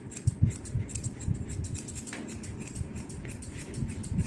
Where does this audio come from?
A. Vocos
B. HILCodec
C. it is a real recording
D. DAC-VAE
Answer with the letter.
C